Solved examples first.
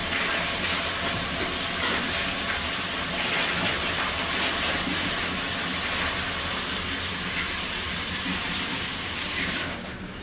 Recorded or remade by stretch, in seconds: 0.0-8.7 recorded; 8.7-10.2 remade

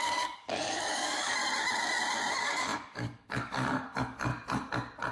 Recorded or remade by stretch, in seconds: 0.0-1.4 remade; 1.4-2.3 recorded; 2.3-4.3 remade; 4.3-5.1 recorded

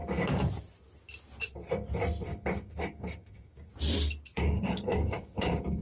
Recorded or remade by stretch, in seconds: 0.0-2.3 recorded; 2.3-3.7 remade; 3.7-4.3 recorded; 4.3-5.8 remade

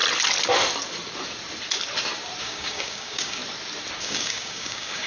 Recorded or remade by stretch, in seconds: 0.0-2.4 recorded; 2.4-3.4 remade; 3.4-4.0 recorded; 4.0-5.1 remade

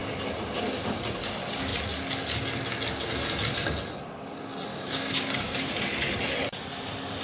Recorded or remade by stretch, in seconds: 0.0-4.7 recorded; 4.7-5.7 remade; 5.7-7.2 recorded

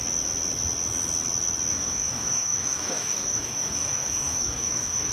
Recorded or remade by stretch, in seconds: 0.0-1.7 recorded; 1.7-5.1 remade

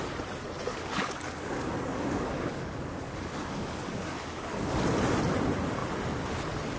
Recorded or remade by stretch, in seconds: 0.0-0.7 recorded; 0.7-4.8 remade; 4.8-6.8 recorded